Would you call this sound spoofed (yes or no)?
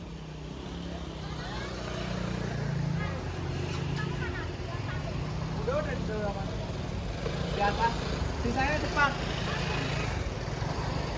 no